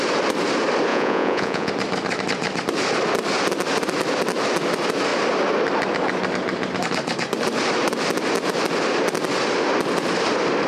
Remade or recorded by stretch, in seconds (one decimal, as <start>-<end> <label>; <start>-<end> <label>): 0.0-0.9 recorded; 0.9-1.7 remade; 1.7-10.7 recorded